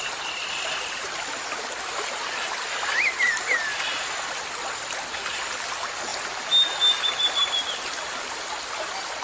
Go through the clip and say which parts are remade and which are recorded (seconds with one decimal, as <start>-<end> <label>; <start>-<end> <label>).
0.0-9.2 recorded